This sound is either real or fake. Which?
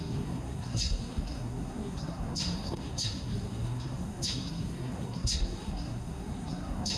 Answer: fake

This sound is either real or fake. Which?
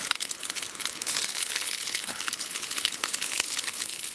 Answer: fake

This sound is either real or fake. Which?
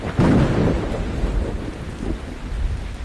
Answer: real